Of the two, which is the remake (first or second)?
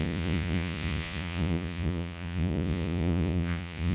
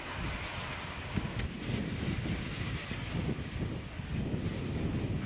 first